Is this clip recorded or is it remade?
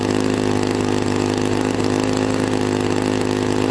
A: recorded